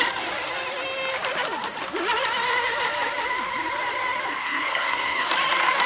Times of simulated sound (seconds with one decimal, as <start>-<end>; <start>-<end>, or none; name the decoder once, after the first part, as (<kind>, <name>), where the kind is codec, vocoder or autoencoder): 4.3-5.3 (codec, SNAC)